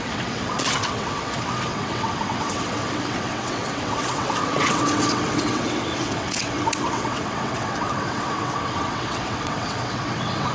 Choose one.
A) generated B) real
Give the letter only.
A